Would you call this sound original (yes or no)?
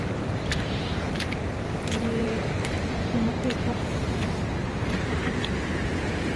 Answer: no